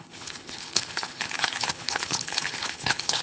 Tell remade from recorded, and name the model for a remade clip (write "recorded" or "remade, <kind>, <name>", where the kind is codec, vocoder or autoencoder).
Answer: remade, codec, HILCodec